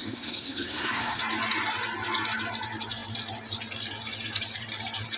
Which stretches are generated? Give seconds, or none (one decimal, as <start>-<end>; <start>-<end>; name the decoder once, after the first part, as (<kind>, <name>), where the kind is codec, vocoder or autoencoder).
0.0-1.2 (codec, SNAC)